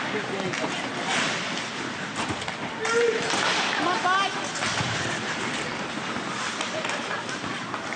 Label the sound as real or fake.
real